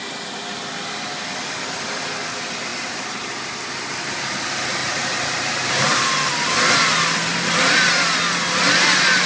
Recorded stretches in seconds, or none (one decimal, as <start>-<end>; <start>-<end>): 0.0-2.7; 3.3-4.8; 6.3-9.3